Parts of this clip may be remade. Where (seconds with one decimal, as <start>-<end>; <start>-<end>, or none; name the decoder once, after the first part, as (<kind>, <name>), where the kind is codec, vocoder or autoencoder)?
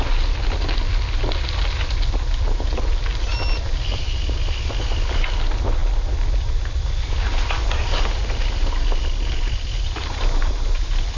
none